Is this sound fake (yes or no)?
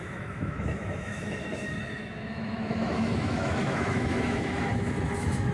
yes